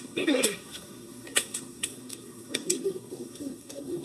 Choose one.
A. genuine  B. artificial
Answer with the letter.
B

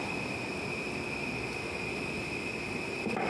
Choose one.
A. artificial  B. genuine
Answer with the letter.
B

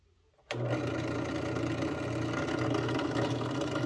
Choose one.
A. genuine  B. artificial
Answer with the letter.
A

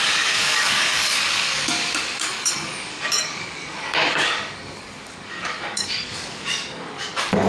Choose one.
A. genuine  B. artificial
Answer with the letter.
B